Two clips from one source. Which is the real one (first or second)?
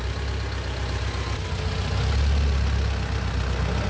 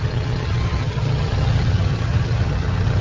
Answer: first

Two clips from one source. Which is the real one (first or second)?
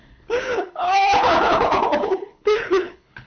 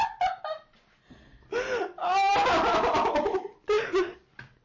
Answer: second